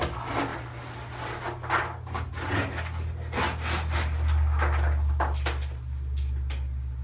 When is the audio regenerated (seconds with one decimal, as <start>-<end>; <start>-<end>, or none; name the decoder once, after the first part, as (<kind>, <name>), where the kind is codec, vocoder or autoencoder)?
none